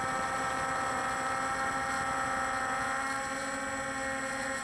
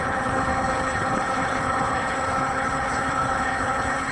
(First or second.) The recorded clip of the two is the first